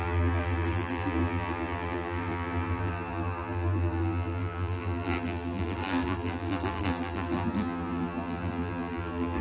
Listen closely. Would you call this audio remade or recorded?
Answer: remade